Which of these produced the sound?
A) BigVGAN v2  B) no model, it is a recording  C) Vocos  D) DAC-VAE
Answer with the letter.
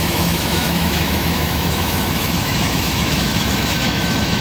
D